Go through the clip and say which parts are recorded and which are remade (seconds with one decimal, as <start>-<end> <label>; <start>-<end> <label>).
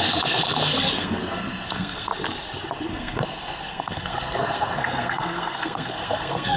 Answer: 0.0-2.1 remade; 2.1-2.9 recorded; 2.9-6.6 remade